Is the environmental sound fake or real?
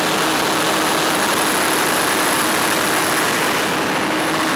real